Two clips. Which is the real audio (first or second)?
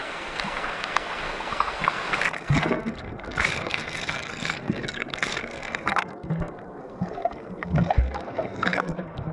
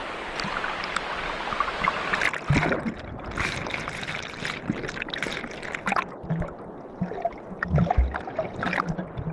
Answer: second